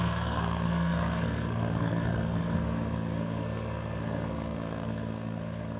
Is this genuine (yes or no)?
no